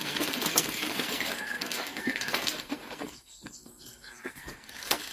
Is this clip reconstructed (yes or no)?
yes